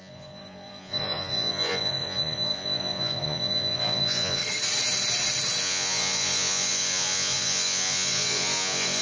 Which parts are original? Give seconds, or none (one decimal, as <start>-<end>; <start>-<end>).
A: 4.4-5.6